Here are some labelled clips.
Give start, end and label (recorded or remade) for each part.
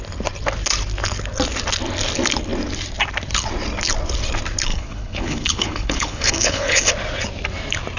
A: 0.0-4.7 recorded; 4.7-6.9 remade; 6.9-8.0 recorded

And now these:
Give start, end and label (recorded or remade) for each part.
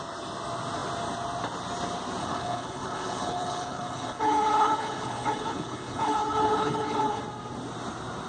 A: 0.0-2.2 recorded; 2.2-7.2 remade; 7.2-8.3 recorded